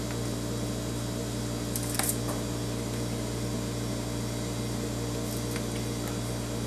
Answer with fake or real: real